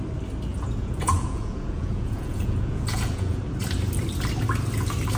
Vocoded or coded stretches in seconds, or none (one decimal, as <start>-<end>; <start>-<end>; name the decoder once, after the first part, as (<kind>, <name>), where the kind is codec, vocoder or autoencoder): 0.5-3.4 (vocoder, Vocos)